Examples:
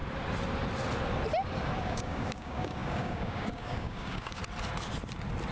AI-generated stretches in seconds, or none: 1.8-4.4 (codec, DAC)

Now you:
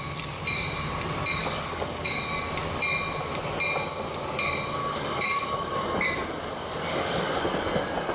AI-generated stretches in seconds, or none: 1.4-2.2 (codec, DAC); 4.8-7.4

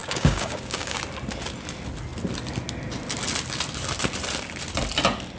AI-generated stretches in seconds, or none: 0.0-1.0 (codec, DAC)

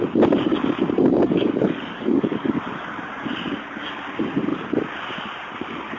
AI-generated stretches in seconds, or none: 1.1-2.6 (codec, DAC)